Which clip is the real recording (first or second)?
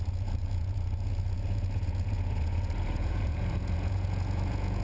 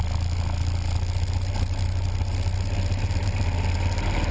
second